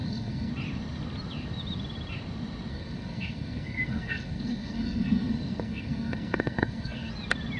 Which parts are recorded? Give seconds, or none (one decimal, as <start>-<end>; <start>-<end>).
0.5-2.7; 7.1-7.6

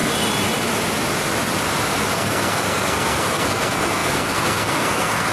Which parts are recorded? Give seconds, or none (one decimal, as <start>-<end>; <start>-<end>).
0.0-2.1

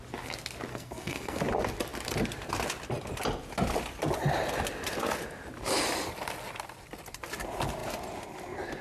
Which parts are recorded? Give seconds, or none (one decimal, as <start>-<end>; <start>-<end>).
0.0-0.7; 1.4-8.8